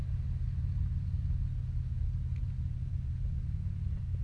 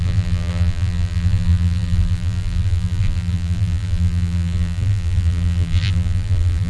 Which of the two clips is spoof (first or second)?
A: second